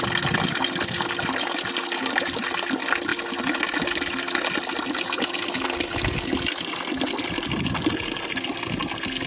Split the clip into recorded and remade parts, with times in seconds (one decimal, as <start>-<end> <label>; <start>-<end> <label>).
0.0-9.3 recorded